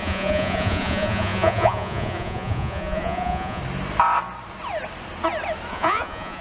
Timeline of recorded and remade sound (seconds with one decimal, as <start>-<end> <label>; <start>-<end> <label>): 0.0-3.6 remade; 3.6-5.7 recorded; 5.7-6.4 remade